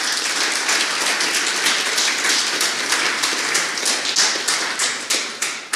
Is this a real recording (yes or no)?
yes